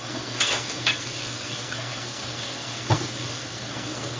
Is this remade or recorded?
remade